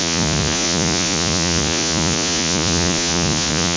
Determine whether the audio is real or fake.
fake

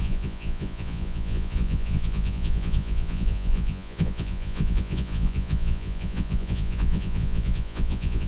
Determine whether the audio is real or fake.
fake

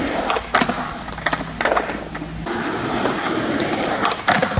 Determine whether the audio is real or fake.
real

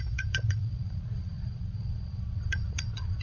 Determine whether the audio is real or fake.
fake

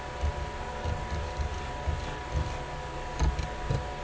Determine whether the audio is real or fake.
real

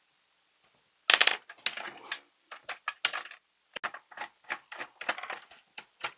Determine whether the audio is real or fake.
real